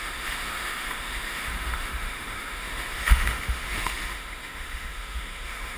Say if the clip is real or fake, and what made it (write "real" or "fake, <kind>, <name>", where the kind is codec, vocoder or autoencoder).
fake, autoencoder, DAC-VAE